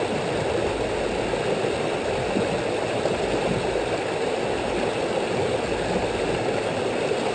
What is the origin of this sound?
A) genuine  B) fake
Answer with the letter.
A